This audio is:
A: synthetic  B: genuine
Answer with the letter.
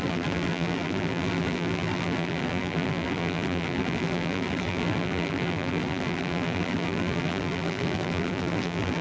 A